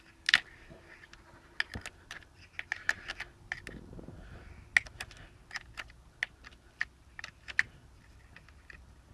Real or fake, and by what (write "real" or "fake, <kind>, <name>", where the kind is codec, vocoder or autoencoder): real